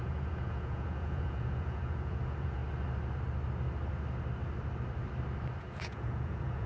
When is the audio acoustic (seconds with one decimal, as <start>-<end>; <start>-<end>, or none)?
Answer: 2.6-5.6